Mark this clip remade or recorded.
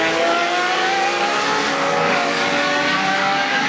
remade